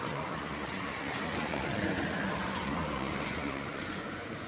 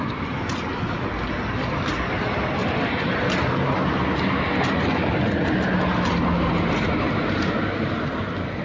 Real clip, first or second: second